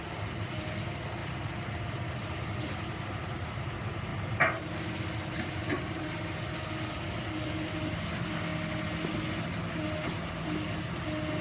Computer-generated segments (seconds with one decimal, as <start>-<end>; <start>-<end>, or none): none